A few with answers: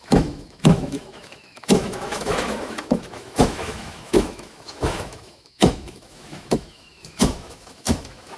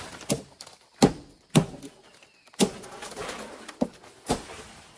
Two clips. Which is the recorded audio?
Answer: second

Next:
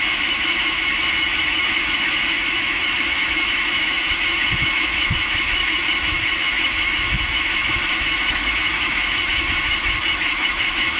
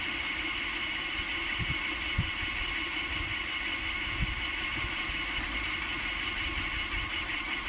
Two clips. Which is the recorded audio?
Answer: second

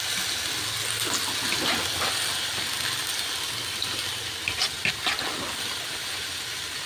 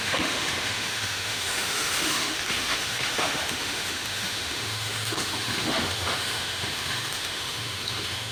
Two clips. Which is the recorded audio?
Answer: first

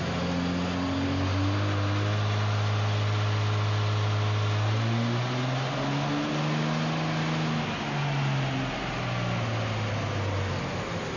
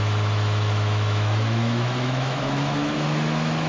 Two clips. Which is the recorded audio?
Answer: first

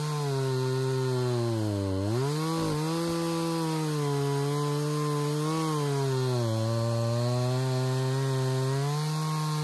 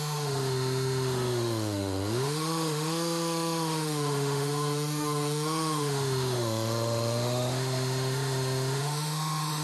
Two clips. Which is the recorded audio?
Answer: first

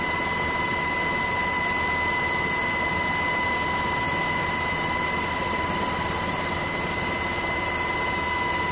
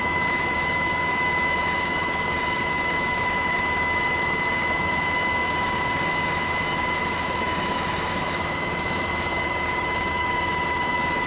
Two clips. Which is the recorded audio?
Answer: first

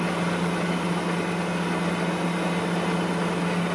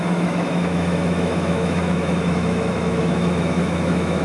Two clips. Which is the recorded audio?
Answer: first